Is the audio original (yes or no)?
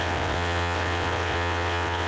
no